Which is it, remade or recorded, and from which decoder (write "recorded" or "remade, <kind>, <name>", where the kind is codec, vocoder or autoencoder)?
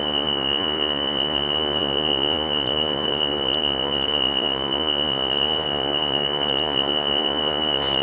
remade, vocoder, Vocos